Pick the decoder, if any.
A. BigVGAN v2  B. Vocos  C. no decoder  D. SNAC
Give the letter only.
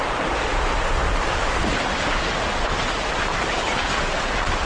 C